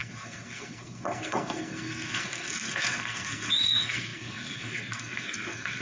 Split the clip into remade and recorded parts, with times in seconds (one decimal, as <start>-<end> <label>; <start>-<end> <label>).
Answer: 0.0-5.8 remade